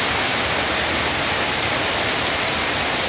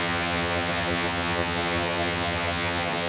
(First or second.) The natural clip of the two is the first